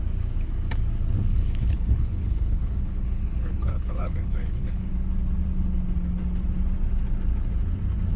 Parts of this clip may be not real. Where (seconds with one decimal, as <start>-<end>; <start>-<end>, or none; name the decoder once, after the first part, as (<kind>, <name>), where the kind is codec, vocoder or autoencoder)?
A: 1.3-4.9 (codec, HILCodec)